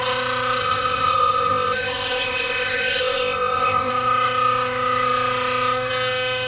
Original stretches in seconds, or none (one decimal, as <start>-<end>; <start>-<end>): 0.0-0.6; 3.9-6.5